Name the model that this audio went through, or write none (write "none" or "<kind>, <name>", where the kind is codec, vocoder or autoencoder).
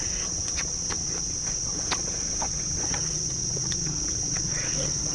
vocoder, WaveNeXt